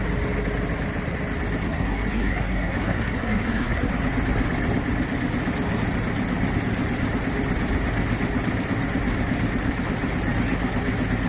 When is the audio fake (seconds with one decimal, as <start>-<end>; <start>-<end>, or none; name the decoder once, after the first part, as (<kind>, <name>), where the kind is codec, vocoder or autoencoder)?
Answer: 1.7-3.9 (codec, SNAC)